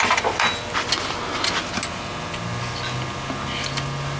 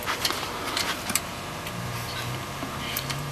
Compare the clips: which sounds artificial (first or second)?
second